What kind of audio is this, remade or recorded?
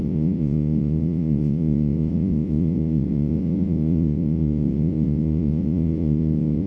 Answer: remade